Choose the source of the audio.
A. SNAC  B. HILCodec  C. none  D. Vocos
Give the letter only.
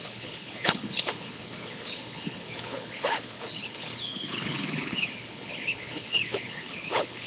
B